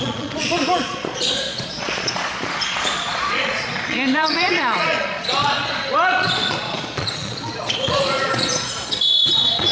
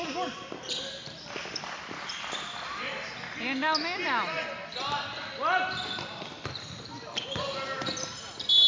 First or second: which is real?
second